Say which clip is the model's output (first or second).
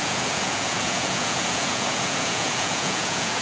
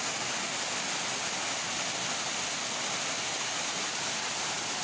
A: first